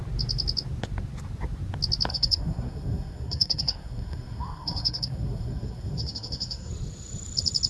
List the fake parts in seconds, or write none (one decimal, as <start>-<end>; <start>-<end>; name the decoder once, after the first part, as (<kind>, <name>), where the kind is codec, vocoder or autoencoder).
2.1-6.7 (codec, SNAC)